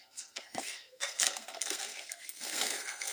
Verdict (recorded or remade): remade